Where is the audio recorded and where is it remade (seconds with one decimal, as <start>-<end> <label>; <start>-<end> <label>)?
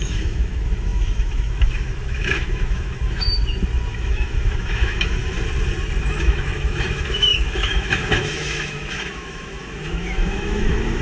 0.0-3.3 remade; 3.3-3.9 recorded; 3.9-5.2 remade; 5.2-6.1 recorded; 6.1-11.0 remade